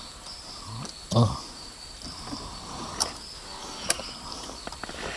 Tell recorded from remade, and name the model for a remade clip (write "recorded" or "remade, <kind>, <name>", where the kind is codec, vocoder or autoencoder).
recorded